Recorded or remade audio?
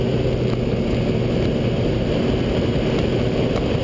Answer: recorded